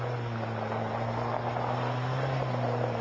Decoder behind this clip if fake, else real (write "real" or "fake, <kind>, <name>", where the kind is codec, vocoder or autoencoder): real